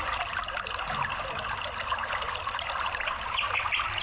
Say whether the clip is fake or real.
real